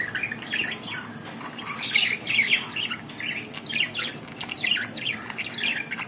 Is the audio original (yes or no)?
yes